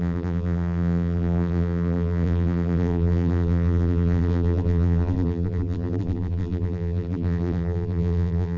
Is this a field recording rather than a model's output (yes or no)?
no